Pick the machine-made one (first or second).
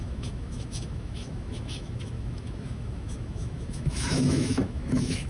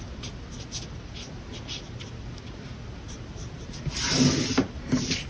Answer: first